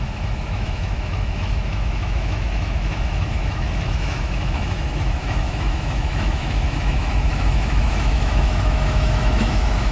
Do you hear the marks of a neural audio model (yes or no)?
yes